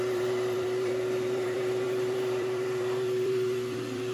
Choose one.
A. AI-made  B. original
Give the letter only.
A